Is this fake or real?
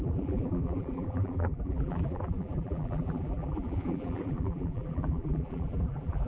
fake